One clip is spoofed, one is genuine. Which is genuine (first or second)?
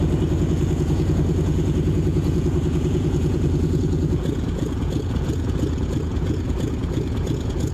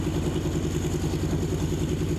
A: second